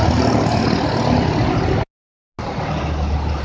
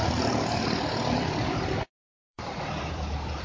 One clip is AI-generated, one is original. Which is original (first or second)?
first